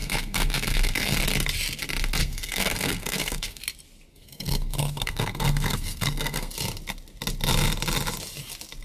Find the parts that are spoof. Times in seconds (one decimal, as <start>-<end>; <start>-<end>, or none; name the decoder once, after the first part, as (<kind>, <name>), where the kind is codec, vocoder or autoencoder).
0.0-1.2 (codec, SNAC); 2.2-3.6; 4.1-6.5